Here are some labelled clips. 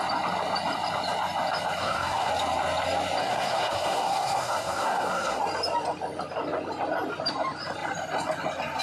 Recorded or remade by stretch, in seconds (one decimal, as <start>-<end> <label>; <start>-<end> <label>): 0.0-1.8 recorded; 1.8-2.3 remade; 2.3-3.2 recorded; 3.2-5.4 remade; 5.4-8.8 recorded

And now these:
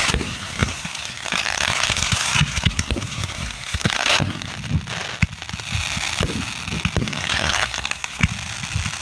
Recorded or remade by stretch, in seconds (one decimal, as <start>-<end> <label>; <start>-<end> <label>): 0.0-4.5 remade; 4.5-7.0 recorded; 7.0-8.2 remade; 8.2-9.0 recorded

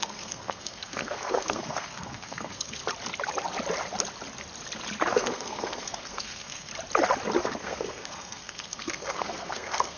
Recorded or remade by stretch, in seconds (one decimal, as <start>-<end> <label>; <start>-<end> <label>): 0.0-2.8 remade; 2.8-5.1 recorded; 5.1-6.7 remade; 6.7-7.4 recorded; 7.4-10.0 remade